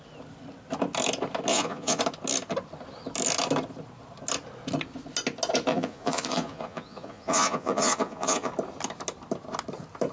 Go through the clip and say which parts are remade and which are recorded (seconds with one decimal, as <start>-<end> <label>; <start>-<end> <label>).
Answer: 0.0-1.5 recorded; 1.5-2.0 remade; 2.0-5.7 recorded; 5.7-8.5 remade; 8.5-10.1 recorded